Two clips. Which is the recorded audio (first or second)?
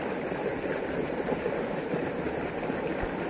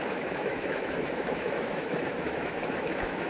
first